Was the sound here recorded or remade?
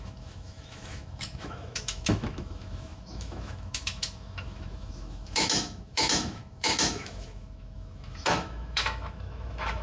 remade